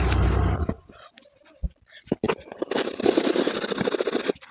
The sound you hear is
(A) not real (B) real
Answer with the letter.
B